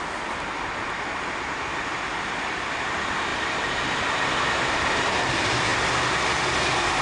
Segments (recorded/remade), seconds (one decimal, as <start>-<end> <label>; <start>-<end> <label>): 0.0-7.0 recorded